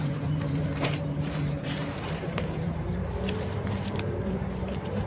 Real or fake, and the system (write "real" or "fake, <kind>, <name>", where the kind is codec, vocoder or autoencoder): fake, vocoder, BigVGAN v2